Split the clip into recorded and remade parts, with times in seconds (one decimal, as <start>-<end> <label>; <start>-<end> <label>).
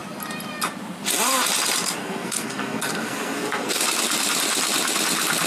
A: 0.0-2.0 recorded; 2.0-3.8 remade; 3.8-5.5 recorded